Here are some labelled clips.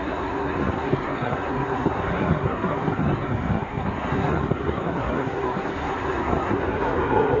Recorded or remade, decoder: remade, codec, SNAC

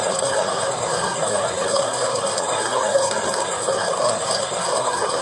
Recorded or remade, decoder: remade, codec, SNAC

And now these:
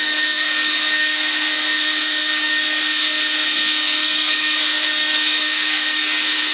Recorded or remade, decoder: remade, codec, SNAC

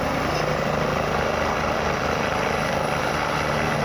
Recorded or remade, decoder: recorded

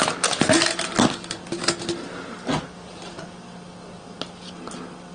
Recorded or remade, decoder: recorded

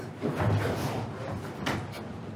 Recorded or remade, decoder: recorded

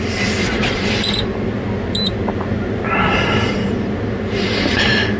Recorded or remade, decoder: recorded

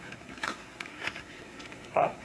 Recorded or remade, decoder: remade, codec, SNAC